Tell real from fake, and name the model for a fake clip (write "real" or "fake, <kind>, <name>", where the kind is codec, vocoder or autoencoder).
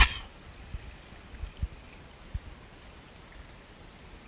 real